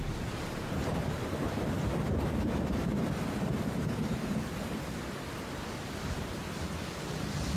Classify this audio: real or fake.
real